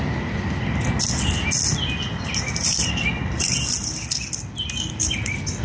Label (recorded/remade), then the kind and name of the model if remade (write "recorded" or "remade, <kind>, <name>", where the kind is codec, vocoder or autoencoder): recorded